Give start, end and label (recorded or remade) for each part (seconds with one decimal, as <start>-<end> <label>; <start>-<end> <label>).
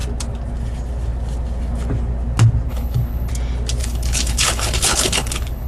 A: 0.0-2.7 recorded; 2.7-3.3 remade; 3.3-3.8 recorded; 3.8-5.7 remade